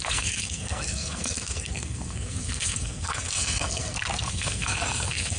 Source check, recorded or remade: remade